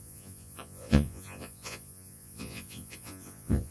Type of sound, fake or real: fake